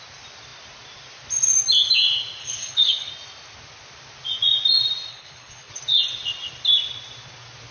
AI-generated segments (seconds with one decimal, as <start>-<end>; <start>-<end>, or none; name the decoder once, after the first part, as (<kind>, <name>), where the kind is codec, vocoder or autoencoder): 2.4-3.1 (codec, HILCodec); 5.1-5.7